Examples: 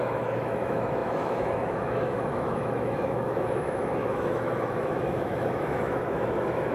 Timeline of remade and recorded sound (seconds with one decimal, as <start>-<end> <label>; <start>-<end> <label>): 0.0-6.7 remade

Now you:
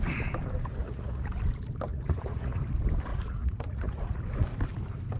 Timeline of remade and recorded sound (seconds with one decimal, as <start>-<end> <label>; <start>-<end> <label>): 0.0-0.8 recorded; 0.8-1.4 remade; 1.4-1.9 recorded; 1.9-2.6 remade; 2.6-3.1 recorded; 3.1-4.2 remade; 4.2-5.2 recorded

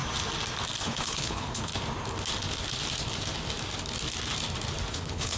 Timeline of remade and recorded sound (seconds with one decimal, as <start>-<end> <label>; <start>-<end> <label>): 0.0-0.8 recorded; 0.8-1.7 remade; 1.7-4.9 recorded; 4.9-5.4 remade

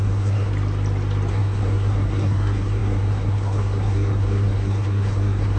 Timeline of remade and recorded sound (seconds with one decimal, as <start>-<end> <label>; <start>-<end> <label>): 0.0-0.5 remade; 0.5-1.3 recorded; 1.3-5.6 remade

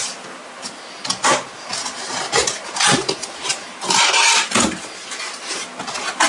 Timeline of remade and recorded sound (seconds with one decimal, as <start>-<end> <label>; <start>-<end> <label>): 0.0-3.5 recorded; 3.5-4.2 remade; 4.2-6.3 recorded

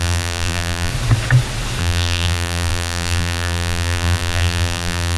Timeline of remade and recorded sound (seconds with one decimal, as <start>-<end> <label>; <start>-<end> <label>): 0.0-0.9 remade; 0.9-1.8 recorded; 1.8-5.2 remade

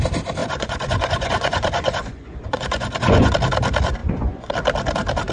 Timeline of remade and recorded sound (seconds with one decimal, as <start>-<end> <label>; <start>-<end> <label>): 0.0-0.4 recorded; 0.4-3.3 remade; 3.3-4.0 recorded; 4.0-4.5 remade; 4.5-5.3 recorded

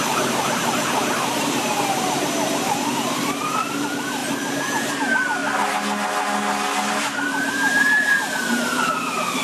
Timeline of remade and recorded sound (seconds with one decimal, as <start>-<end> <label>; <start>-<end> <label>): 0.0-4.2 remade; 4.2-4.9 recorded; 4.9-5.4 remade; 5.4-6.9 recorded; 6.9-9.4 remade